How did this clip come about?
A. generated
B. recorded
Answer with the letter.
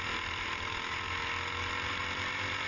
B